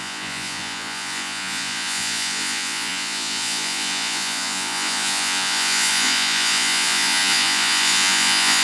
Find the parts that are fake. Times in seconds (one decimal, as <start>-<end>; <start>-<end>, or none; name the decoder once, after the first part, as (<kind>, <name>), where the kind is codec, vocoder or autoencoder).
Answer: 0.0-8.6 (vocoder, Vocos)